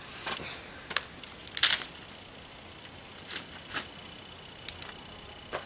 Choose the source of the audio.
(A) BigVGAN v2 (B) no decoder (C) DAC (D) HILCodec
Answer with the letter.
B